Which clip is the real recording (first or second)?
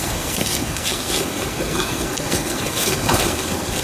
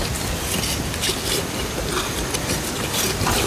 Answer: second